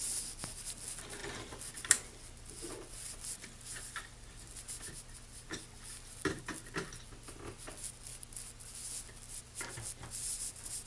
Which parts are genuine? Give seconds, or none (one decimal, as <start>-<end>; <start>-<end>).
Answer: 0.0-10.9